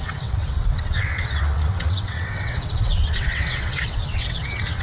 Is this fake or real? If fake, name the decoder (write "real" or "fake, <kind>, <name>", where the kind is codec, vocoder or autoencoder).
fake, vocoder, WaveNeXt